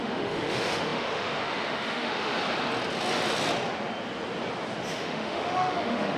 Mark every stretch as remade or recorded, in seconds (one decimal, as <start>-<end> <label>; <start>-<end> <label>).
0.0-2.3 remade; 2.3-4.9 recorded; 4.9-6.2 remade